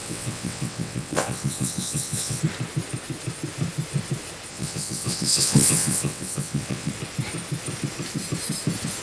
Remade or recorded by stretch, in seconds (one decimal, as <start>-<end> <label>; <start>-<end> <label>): 0.0-2.4 remade; 2.4-4.5 recorded; 4.5-6.9 remade; 6.9-9.0 recorded